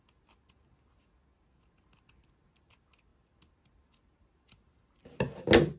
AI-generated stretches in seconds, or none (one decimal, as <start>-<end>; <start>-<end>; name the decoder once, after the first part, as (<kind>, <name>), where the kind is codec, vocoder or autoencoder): none